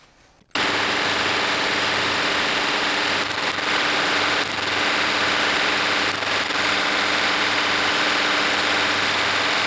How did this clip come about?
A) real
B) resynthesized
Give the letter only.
A